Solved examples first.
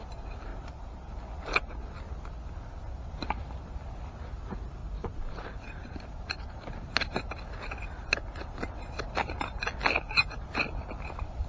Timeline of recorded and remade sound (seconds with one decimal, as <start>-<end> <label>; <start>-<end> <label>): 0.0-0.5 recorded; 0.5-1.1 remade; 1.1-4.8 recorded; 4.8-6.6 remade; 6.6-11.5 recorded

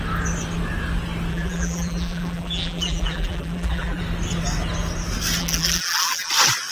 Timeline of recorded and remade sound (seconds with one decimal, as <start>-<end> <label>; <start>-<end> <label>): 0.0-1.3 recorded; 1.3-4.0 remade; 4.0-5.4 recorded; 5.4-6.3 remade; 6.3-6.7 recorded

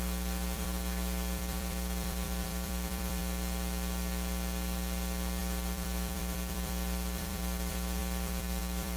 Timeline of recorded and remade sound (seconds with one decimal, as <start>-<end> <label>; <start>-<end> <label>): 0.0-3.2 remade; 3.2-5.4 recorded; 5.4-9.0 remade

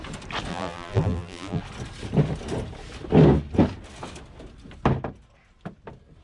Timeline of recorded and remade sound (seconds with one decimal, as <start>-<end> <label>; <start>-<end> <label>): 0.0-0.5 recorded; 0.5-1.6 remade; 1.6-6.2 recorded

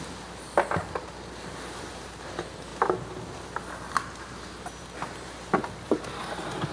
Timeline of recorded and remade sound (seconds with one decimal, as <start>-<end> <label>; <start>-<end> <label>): 0.0-6.7 recorded

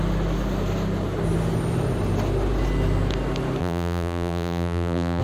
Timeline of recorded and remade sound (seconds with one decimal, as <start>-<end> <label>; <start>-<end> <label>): 0.0-3.6 recorded; 3.6-5.2 remade